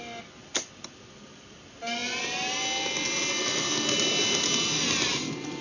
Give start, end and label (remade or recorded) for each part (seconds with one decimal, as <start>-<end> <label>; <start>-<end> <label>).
0.0-5.6 recorded